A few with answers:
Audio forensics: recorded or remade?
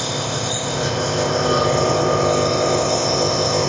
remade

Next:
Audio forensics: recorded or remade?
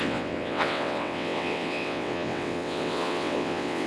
remade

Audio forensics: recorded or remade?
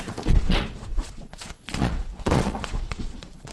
remade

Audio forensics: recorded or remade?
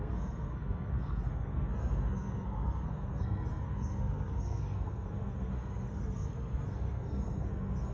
remade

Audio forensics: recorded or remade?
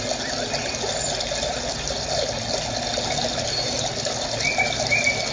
recorded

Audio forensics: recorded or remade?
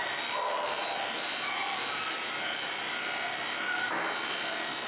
recorded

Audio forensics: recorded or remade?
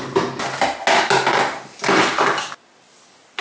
recorded